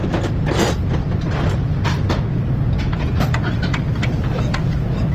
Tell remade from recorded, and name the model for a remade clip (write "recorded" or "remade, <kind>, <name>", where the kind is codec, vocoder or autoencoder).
recorded